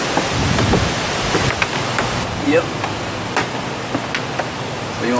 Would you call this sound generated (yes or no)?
no